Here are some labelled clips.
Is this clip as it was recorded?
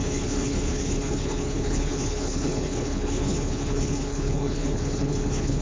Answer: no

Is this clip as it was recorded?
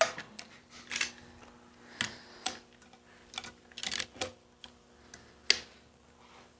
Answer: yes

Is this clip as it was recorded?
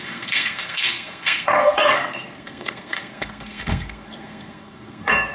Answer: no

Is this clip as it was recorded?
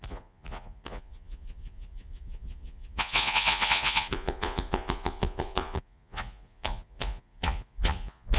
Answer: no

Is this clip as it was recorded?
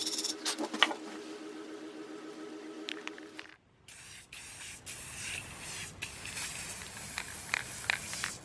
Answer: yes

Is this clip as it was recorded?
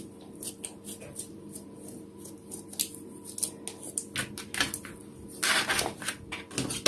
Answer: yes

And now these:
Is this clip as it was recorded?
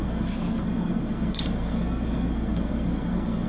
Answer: no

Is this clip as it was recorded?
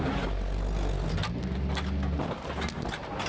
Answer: yes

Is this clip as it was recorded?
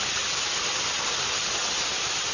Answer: yes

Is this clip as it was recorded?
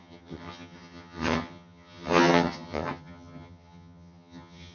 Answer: no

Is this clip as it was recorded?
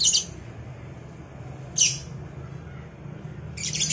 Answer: yes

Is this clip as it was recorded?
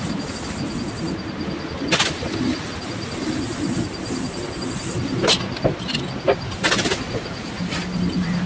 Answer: yes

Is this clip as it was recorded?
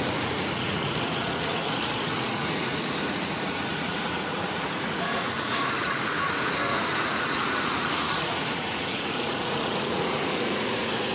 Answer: no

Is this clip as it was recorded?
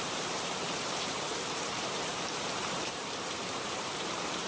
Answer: no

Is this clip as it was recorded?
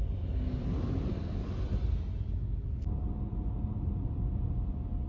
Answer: yes